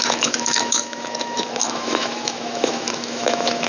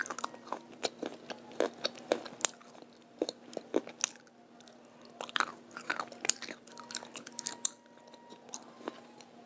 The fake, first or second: first